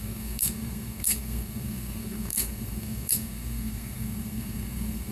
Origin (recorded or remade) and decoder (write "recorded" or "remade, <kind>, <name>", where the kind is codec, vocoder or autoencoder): remade, codec, SNAC